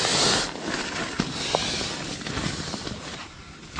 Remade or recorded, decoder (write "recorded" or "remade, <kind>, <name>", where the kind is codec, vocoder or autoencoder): recorded